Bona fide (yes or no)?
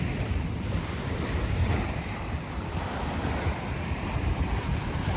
no